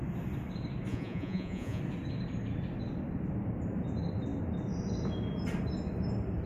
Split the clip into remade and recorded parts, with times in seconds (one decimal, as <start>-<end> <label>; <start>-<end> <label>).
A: 0.0-0.9 recorded; 0.9-1.8 remade; 1.8-6.5 recorded